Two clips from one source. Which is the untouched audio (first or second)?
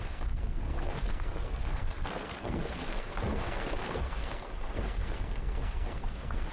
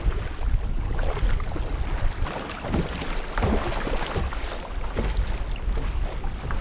second